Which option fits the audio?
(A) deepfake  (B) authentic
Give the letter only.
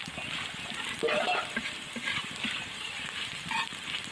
B